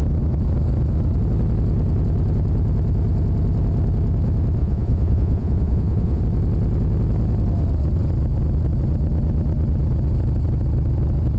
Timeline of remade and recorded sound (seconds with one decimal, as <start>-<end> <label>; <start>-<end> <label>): 0.0-4.6 recorded; 4.6-6.2 remade; 6.2-11.4 recorded